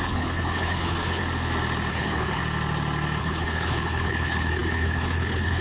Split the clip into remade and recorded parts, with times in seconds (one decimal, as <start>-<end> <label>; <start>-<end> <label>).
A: 0.0-1.2 remade; 1.2-1.9 recorded; 1.9-2.4 remade; 2.4-3.2 recorded; 3.2-5.6 remade